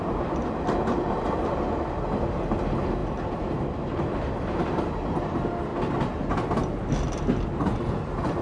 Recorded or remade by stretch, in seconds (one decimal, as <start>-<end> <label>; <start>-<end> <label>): 0.0-8.4 recorded